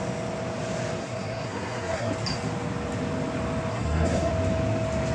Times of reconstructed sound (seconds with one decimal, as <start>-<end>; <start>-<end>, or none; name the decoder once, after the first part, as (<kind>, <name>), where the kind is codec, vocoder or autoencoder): 1.0-2.1 (codec, SNAC); 3.7-4.3